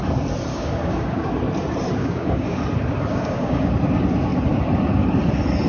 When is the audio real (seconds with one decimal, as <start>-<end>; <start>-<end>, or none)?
0.0-0.5; 1.3-2.0; 2.6-3.1; 3.7-5.7